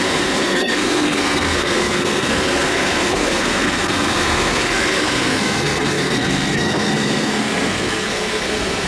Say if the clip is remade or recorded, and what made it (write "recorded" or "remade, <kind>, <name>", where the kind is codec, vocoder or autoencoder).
remade, codec, SNAC